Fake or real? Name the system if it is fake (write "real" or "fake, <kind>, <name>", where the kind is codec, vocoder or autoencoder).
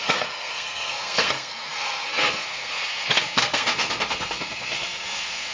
fake, codec, SNAC